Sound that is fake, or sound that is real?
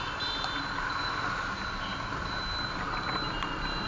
real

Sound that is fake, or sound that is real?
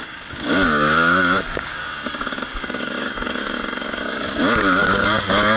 fake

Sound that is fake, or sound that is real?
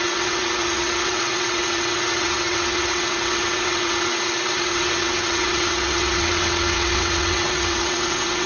fake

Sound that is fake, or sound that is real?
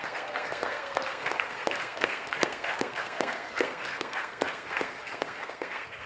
fake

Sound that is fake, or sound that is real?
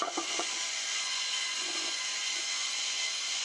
fake